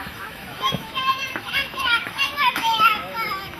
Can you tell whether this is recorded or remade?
remade